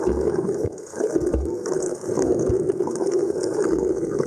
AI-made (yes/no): yes